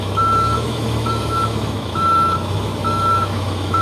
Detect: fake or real fake